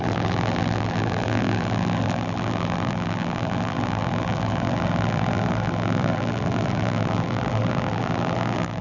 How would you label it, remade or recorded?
remade